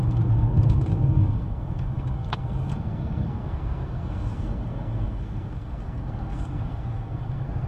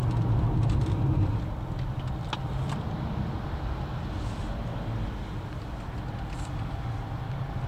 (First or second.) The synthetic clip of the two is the first